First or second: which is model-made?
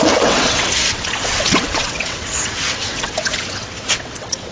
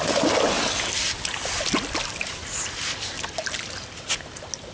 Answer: first